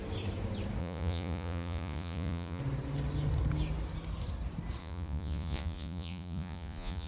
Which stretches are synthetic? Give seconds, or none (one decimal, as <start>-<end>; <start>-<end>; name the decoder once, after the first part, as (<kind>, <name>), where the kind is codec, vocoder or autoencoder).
0.8-2.6 (vocoder, Vocos); 4.8-7.1